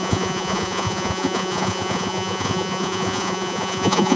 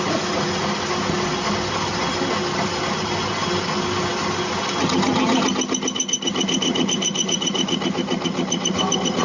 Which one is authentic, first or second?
second